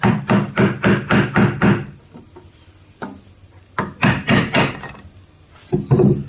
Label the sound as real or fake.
fake